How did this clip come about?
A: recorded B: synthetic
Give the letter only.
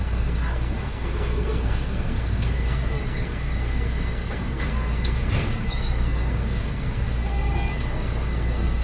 B